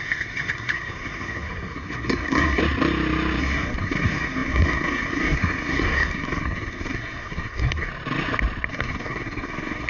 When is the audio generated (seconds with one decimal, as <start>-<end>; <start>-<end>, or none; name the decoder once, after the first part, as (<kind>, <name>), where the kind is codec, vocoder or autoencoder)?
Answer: 0.0-2.6 (codec, SNAC); 3.4-7.9; 8.7-9.9